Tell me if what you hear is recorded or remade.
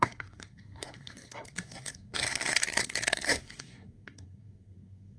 remade